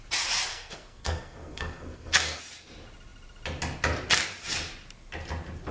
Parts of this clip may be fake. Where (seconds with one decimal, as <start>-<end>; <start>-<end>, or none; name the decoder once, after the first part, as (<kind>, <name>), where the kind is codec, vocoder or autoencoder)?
0.5-2.4 (codec, SNAC)